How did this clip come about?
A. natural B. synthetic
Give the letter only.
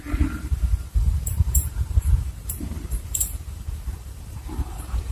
B